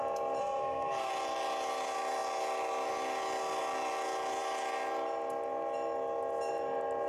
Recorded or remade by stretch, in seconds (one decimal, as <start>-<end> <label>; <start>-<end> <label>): 0.0-0.4 recorded; 0.4-1.1 remade; 1.1-7.1 recorded